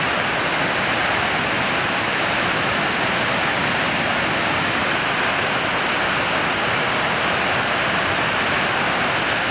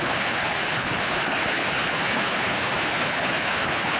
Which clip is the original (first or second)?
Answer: first